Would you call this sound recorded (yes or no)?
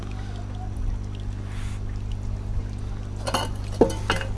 yes